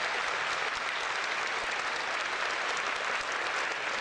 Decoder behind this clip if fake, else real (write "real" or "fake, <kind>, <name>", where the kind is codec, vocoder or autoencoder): real